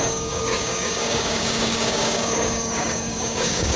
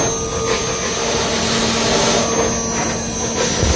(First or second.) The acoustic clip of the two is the second